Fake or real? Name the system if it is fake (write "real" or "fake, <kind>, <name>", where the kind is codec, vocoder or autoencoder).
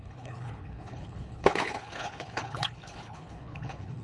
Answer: fake, codec, HILCodec